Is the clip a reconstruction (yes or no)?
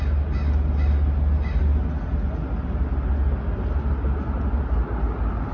no